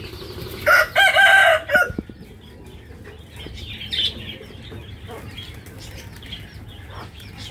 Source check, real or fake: real